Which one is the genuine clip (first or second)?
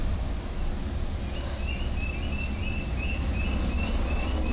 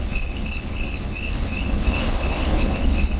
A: first